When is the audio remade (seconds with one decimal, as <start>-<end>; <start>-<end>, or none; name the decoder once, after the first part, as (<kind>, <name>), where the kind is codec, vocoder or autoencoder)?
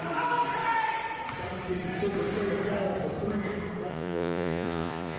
3.9-5.2 (vocoder, Vocos)